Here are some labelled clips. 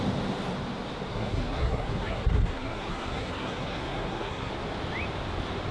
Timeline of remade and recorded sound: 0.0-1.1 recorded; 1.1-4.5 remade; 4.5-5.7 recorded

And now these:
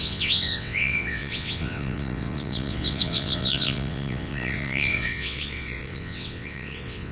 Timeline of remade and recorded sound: 0.0-7.1 remade

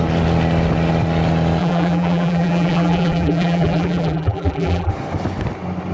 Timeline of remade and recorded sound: 0.0-1.6 recorded; 1.6-4.9 remade; 4.9-5.9 recorded

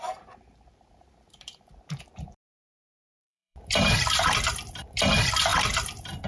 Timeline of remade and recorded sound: 0.0-6.3 remade

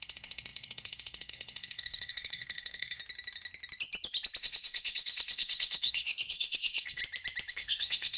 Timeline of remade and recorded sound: 0.0-3.0 remade; 3.0-4.4 recorded; 4.4-7.0 remade; 7.0-7.5 recorded; 7.5-8.2 remade

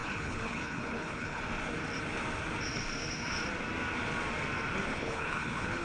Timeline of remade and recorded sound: 0.0-1.4 remade; 1.4-4.9 recorded; 4.9-5.8 remade